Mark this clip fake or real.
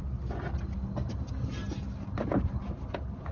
real